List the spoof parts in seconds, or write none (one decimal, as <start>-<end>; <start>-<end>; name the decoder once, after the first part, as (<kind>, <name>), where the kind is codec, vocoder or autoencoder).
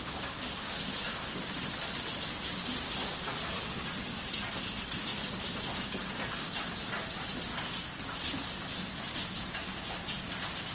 none